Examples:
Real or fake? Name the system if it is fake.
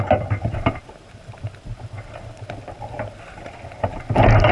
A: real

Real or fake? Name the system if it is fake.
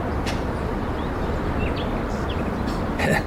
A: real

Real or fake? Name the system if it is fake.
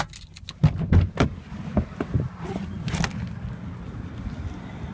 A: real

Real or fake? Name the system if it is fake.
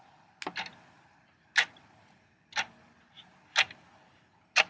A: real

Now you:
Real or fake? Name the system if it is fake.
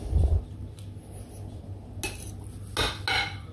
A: real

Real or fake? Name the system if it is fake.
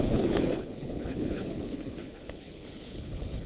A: fake, codec, HILCodec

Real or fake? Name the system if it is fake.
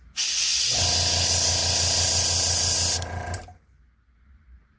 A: real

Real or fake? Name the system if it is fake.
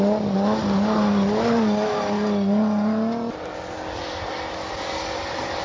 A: real